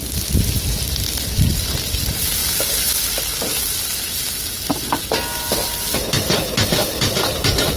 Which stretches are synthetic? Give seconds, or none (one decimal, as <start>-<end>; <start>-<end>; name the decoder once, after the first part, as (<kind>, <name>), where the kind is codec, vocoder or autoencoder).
none